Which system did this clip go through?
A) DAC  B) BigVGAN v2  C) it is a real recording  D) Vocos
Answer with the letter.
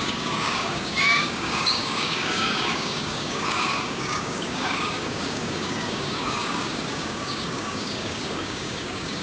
A